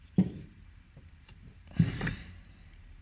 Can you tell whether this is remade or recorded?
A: remade